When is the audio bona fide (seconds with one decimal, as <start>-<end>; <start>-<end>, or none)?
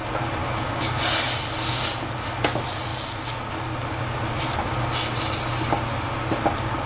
0.0-0.4; 1.0-6.9